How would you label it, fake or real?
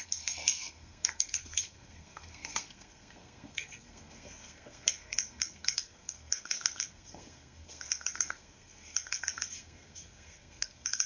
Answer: fake